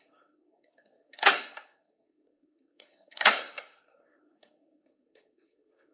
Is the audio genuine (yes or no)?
no